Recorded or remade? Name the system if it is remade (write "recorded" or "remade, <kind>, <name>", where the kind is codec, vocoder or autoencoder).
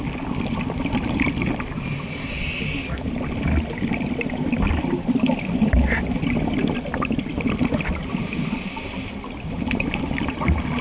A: recorded